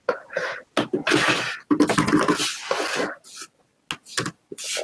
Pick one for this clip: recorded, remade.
recorded